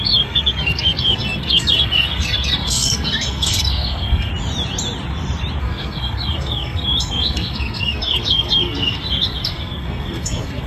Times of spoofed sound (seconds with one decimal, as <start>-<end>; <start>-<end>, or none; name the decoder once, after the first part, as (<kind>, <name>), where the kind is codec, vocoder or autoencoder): 0.0-4.3 (codec, SNAC); 5.6-10.7